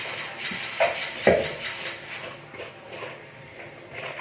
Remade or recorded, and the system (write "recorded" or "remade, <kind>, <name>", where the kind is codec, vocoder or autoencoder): remade, vocoder, BigVGAN v2